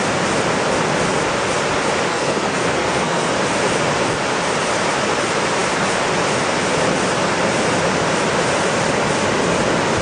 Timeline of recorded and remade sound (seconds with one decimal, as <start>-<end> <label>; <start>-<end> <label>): 0.0-2.1 recorded; 2.1-3.3 remade; 3.3-10.0 recorded